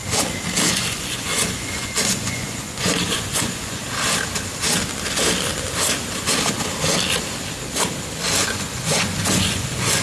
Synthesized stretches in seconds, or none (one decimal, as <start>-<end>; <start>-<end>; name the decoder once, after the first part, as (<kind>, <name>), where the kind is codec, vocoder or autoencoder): 0.7-3.8 (vocoder, Vocos); 8.4-10.0